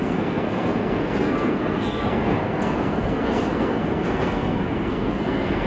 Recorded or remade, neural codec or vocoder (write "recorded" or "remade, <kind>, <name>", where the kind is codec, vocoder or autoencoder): remade, codec, SNAC